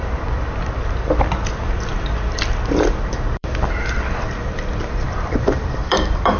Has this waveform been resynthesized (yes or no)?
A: yes